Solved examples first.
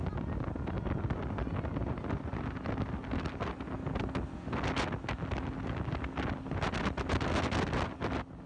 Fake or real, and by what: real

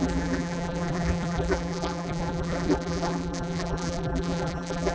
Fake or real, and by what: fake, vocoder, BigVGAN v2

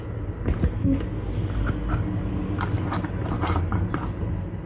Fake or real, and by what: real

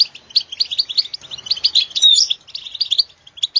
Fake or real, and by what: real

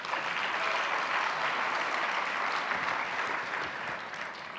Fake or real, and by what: real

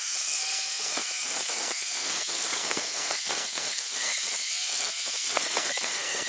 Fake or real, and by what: fake, codec, SNAC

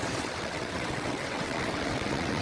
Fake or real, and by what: fake, vocoder, WaveNeXt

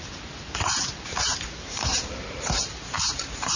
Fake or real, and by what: fake, vocoder, BigVGAN v2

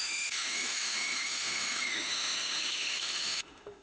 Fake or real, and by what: fake, autoencoder, DAC-VAE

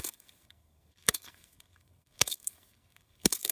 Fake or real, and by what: fake, codec, SNAC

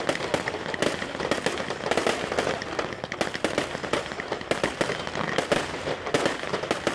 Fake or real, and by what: real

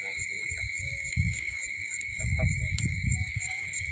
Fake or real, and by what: fake, codec, DAC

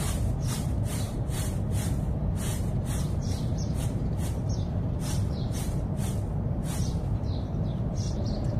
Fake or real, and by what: fake, vocoder, BigVGAN v2